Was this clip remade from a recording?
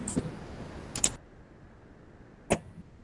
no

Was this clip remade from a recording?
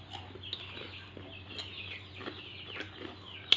no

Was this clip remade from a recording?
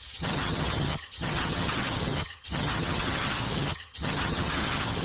yes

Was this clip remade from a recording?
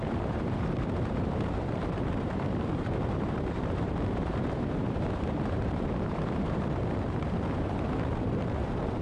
yes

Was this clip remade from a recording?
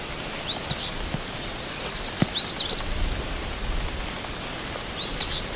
no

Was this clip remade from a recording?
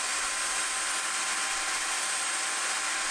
no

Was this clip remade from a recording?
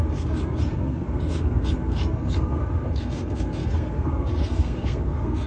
yes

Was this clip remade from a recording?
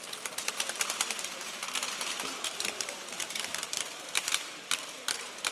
yes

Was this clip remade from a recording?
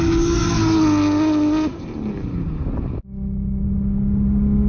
no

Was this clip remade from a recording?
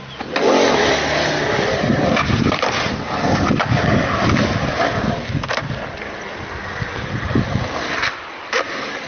no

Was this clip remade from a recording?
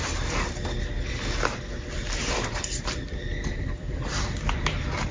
yes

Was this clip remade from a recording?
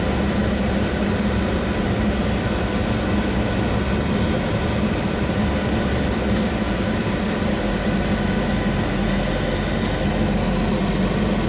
no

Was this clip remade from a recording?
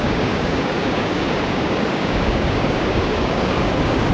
yes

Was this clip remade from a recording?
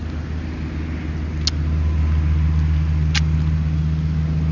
no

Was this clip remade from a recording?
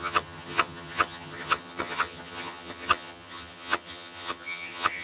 yes